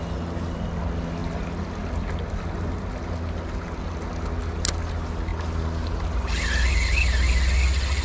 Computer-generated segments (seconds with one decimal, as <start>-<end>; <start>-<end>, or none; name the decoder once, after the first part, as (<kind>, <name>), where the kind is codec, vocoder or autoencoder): none

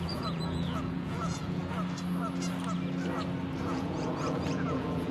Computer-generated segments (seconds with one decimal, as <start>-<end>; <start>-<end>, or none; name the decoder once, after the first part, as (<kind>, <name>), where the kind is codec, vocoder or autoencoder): 0.0-1.6 (vocoder, Vocos); 3.6-5.1

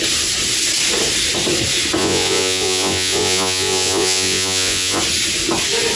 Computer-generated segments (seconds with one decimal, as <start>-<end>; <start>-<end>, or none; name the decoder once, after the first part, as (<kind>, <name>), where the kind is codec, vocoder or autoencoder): 2.0-5.0 (vocoder, Vocos)

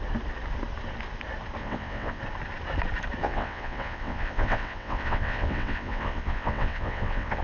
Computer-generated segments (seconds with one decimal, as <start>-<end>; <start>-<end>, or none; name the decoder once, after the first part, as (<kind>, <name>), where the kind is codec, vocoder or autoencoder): 1.6-2.2 (vocoder, WaveNeXt); 3.2-7.4

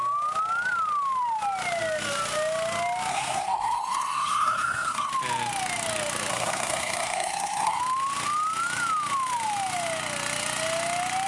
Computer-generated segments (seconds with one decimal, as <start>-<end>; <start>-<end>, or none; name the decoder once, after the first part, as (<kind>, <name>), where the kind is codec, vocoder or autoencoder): 3.1-5.1 (codec, SNAC); 6.3-7.8

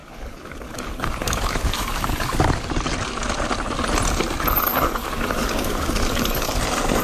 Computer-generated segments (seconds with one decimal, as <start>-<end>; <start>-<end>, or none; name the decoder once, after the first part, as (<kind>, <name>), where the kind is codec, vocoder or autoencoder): 0.0-2.7 (codec, DAC); 4.7-6.6